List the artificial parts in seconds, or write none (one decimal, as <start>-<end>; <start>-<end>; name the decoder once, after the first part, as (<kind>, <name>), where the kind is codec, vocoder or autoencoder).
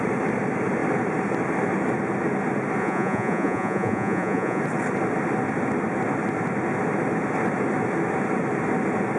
2.8-4.6 (vocoder, Vocos)